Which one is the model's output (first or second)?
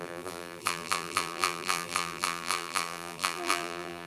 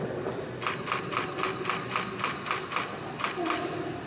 first